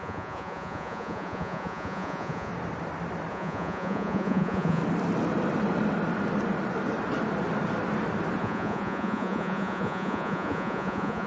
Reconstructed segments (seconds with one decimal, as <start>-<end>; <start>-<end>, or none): 0.0-2.5; 3.3-4.8; 8.4-11.3